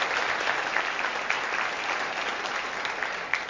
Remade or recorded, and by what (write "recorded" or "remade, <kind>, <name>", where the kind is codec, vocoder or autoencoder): recorded